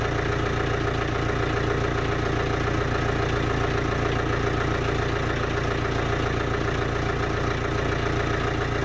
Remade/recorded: recorded